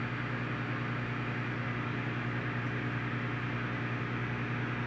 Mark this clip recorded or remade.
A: recorded